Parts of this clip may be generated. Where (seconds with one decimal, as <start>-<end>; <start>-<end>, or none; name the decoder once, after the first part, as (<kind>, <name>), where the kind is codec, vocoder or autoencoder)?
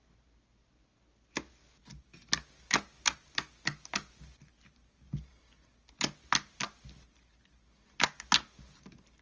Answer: none